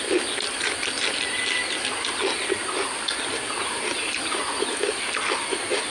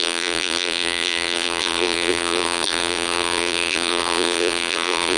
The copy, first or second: second